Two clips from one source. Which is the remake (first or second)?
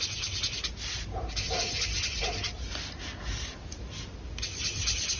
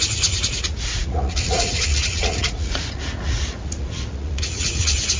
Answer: second